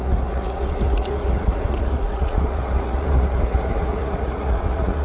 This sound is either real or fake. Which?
fake